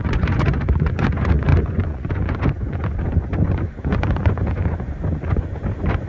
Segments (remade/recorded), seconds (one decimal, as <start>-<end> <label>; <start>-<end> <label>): 0.0-6.1 remade